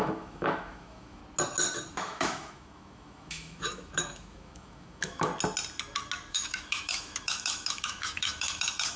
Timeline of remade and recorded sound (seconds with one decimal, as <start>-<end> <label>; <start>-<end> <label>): 0.0-1.2 remade; 1.2-1.9 recorded; 1.9-5.3 remade; 5.3-6.3 recorded; 6.3-9.0 remade